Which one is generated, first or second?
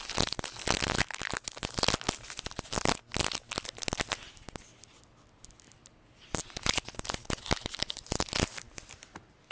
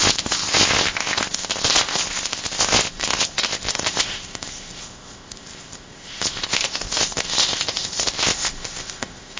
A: second